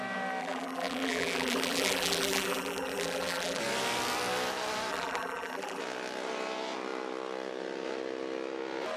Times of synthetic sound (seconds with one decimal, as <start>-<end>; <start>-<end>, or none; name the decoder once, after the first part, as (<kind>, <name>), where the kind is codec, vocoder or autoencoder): 0.4-3.6 (vocoder, BigVGAN v2); 4.9-5.8